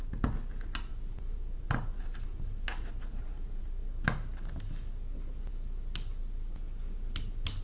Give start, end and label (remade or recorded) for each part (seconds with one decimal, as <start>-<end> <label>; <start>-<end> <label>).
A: 0.0-7.6 recorded